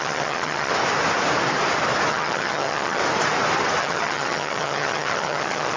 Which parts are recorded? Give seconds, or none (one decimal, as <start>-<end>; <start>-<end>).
0.7-2.1; 3.0-3.8